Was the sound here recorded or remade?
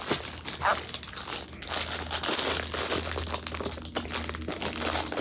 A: recorded